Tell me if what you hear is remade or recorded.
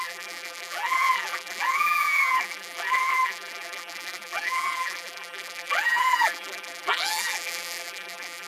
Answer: remade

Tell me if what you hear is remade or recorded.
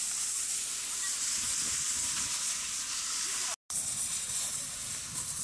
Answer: recorded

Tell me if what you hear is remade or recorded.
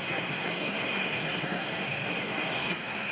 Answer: remade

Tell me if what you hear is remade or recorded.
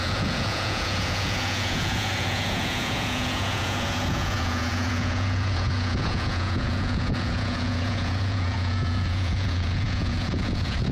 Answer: remade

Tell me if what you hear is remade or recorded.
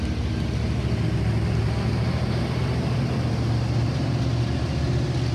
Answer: recorded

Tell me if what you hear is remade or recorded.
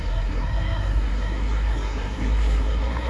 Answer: remade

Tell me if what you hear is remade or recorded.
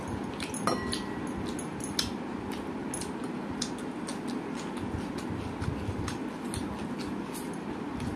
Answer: recorded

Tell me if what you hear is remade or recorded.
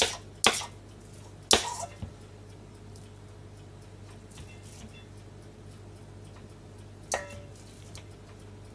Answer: recorded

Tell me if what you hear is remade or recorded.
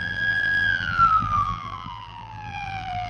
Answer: remade